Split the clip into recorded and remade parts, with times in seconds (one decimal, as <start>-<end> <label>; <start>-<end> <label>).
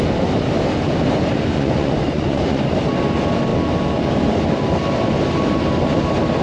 0.0-1.5 recorded; 1.5-2.7 remade; 2.7-6.4 recorded